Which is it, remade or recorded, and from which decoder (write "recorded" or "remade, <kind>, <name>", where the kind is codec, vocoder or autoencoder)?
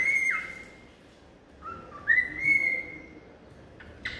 recorded